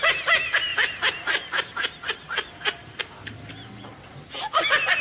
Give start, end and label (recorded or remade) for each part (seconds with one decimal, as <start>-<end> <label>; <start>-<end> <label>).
0.0-0.7 recorded; 0.7-3.7 remade; 3.7-5.0 recorded